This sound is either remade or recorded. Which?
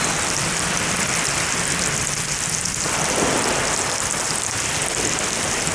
recorded